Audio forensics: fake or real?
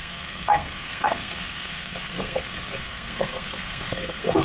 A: fake